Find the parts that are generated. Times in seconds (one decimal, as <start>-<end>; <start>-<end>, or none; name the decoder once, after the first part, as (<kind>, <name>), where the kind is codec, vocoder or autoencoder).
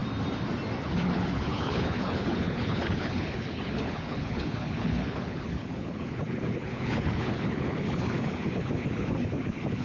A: 0.8-9.8 (codec, HILCodec)